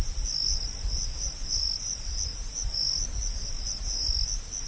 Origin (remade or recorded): recorded